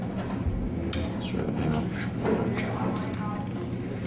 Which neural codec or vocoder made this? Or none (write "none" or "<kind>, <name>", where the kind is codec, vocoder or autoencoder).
none